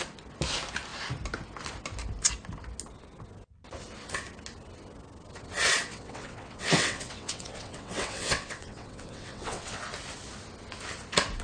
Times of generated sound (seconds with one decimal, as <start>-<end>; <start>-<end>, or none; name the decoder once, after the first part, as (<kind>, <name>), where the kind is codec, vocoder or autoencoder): 5.9-9.8 (vocoder, WaveNeXt)